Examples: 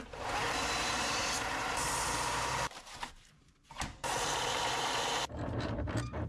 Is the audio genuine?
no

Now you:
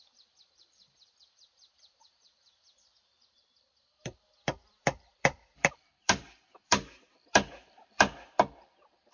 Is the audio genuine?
no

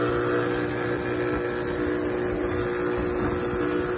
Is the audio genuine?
yes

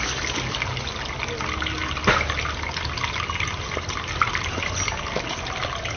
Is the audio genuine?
yes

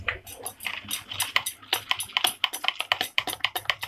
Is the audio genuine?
yes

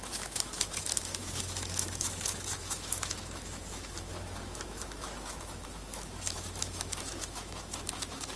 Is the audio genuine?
no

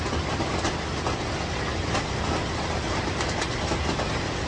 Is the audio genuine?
yes